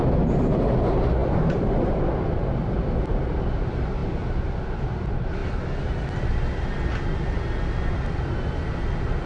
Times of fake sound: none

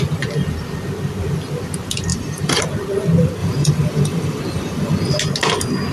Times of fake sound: 2.1-2.6; 3.4-5.2

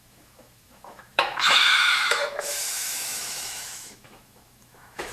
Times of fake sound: 0.0-5.1

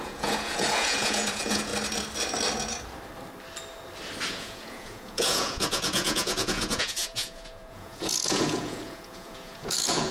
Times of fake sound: 0.0-1.7; 4.3-10.1

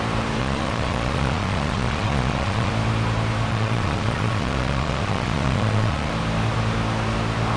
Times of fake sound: 0.4-2.7; 3.5-6.1

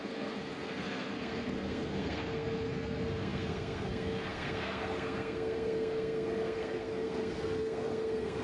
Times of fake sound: 0.0-8.4

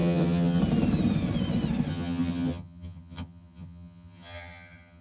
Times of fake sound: 0.0-0.6; 1.9-5.0